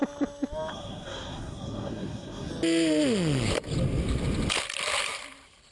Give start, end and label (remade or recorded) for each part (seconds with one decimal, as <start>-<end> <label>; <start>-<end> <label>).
0.0-0.7 recorded; 0.7-2.5 remade; 2.5-5.7 recorded

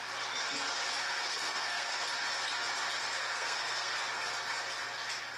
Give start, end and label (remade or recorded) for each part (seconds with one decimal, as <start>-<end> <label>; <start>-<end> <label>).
0.0-1.0 recorded; 1.0-1.9 remade; 1.9-3.2 recorded; 3.2-4.0 remade; 4.0-5.4 recorded